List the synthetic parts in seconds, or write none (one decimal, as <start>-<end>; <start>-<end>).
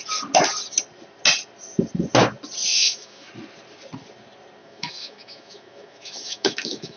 2.7-3.3; 4.6-7.0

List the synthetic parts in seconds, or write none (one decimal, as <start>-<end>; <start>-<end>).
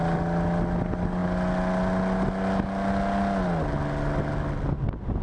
none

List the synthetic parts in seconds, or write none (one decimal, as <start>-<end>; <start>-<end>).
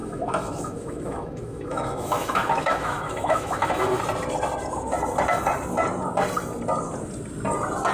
0.0-4.0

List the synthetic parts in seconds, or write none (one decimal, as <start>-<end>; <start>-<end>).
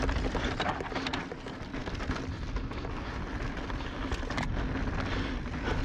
none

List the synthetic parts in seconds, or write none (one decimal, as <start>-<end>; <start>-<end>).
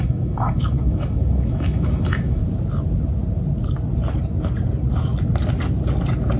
0.0-2.4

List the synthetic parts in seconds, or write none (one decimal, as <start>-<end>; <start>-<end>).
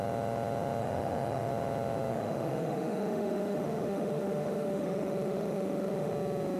0.8-1.5; 2.1-6.1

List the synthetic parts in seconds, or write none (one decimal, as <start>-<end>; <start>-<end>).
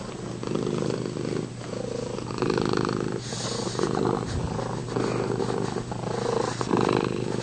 none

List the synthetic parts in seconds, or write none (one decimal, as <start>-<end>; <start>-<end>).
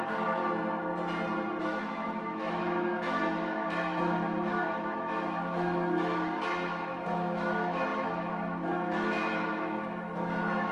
0.0-0.4; 1.6-10.7